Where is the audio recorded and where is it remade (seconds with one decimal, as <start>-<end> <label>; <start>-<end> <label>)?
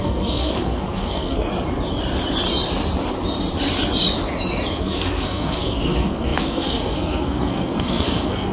0.0-1.5 remade; 1.5-4.8 recorded; 4.8-8.5 remade